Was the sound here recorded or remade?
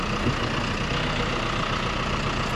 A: recorded